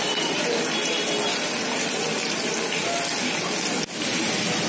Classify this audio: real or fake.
real